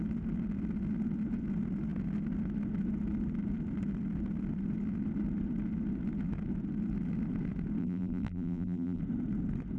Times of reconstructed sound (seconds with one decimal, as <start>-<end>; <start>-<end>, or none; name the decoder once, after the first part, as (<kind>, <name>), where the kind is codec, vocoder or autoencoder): 7.8-9.0 (vocoder, BigVGAN v2)